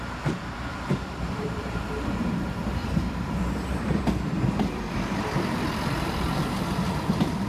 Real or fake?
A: fake